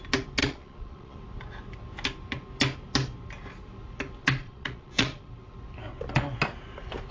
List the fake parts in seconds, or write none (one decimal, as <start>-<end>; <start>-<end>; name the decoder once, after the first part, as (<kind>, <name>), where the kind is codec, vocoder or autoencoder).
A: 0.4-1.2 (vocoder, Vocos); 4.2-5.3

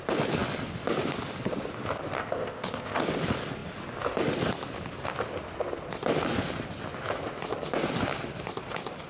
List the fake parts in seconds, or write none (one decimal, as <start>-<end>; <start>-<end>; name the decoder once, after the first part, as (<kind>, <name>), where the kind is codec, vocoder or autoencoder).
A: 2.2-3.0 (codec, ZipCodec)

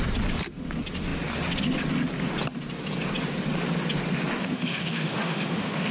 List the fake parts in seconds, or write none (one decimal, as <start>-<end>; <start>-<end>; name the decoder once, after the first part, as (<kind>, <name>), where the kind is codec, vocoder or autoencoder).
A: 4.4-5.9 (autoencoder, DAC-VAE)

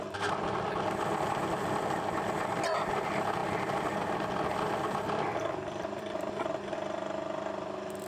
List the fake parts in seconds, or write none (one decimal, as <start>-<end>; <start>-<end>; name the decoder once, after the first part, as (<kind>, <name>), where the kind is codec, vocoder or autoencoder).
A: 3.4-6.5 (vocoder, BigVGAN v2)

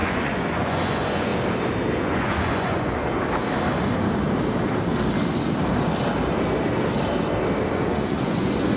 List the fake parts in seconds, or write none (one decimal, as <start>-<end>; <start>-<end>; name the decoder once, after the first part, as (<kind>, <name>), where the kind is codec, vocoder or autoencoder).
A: 0.0-1.3 (vocoder, Vocos); 2.0-3.0; 7.7-8.8